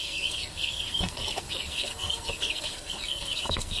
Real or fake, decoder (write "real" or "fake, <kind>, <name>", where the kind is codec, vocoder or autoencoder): fake, codec, SNAC